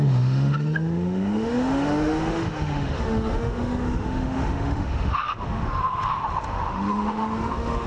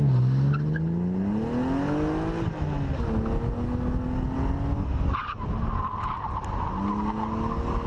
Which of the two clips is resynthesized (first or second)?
first